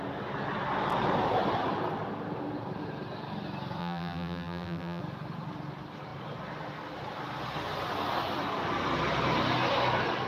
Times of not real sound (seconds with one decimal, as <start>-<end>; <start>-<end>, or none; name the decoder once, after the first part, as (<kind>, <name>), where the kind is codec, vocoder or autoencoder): 3.8-5.0 (vocoder, BigVGAN v2)